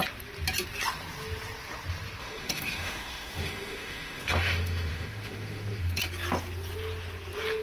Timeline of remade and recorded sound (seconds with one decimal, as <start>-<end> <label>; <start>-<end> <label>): 0.0-2.2 recorded; 2.2-6.0 remade; 6.0-7.6 recorded